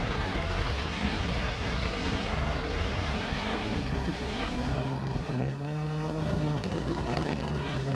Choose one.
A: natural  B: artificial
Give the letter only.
B